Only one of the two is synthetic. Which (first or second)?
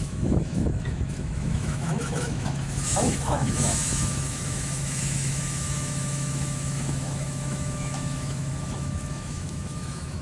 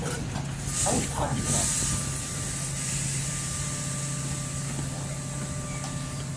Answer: first